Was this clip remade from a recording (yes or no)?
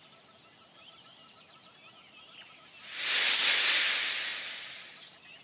no